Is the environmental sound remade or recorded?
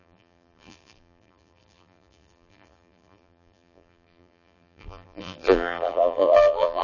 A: remade